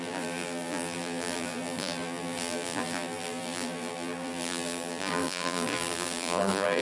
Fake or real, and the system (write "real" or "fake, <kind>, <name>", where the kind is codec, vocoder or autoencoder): fake, vocoder, BigVGAN v2